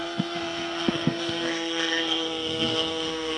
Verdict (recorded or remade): remade